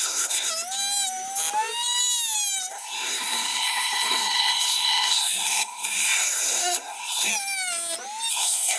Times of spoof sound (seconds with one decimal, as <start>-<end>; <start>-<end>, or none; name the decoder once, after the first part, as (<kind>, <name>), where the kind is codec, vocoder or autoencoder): 0.0-0.5 (codec, SNAC); 2.7-7.3; 8.3-8.8